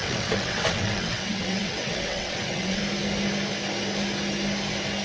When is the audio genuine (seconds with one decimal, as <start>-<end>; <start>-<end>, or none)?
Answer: 2.8-5.0